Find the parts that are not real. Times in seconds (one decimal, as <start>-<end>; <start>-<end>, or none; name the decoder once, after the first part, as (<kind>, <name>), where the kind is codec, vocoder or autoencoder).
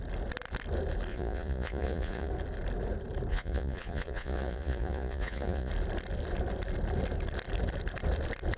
1.1-2.3 (vocoder, Vocos); 3.3-5.7